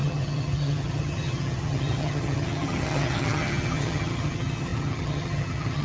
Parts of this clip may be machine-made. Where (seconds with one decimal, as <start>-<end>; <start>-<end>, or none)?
0.0-5.8